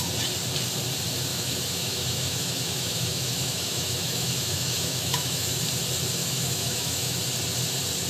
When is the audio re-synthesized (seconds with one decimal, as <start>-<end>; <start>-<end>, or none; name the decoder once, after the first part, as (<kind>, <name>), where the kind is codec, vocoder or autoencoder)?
1.3-5.6 (autoencoder, DAC-VAE); 6.2-7.2